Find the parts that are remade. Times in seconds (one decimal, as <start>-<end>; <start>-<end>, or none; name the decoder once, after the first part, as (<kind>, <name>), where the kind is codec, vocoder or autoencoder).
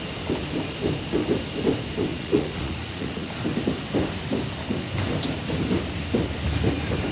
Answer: 2.1-3.3 (vocoder, Vocos)